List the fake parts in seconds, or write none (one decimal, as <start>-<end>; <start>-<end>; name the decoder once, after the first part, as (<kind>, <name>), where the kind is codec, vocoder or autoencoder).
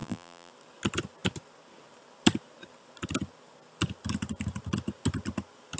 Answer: 0.0-0.5 (vocoder, BigVGAN v2)